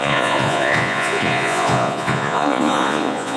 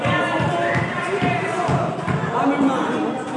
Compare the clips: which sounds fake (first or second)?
first